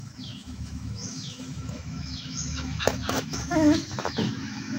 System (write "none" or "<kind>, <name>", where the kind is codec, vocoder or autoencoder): autoencoder, DAC-VAE